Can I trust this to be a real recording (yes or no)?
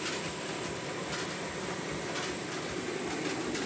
yes